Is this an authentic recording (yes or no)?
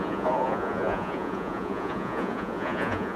no